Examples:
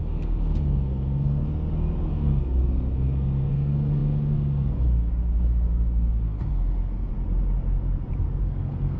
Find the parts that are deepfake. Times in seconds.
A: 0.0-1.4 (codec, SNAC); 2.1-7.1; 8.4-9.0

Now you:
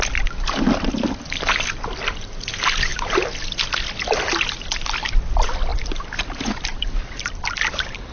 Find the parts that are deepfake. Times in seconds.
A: 5.7-7.0 (vocoder, BigVGAN v2)

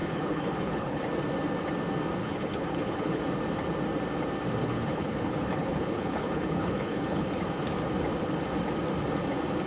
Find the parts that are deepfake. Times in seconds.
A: 0.0-1.0 (codec, HILCodec); 2.2-3.2; 4.6-7.4